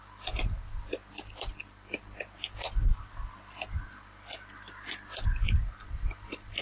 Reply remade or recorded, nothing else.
recorded